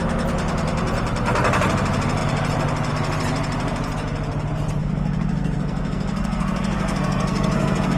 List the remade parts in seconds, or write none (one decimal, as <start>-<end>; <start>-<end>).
4.8-8.0